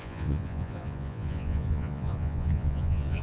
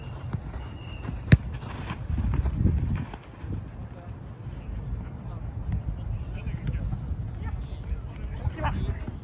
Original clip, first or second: second